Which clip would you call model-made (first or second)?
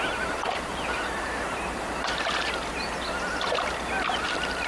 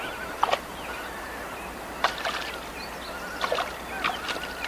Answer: first